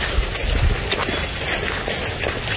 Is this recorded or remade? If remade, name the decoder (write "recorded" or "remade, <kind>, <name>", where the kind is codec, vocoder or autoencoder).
recorded